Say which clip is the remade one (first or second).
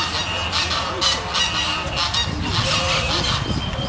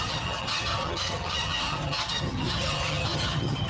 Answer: second